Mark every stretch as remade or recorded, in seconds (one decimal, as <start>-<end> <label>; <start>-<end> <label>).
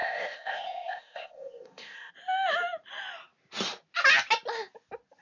0.0-2.1 remade; 2.1-5.2 recorded